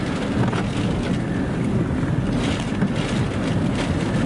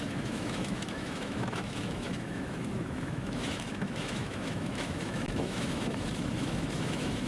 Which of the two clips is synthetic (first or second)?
second